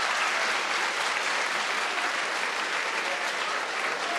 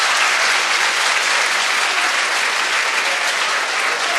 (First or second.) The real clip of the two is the first